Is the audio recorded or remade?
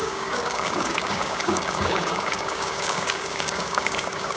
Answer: remade